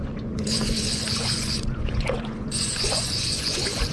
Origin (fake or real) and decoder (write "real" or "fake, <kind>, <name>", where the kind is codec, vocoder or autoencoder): fake, vocoder, Vocos